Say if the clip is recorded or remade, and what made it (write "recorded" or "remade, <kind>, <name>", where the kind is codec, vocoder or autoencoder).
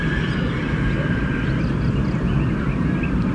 recorded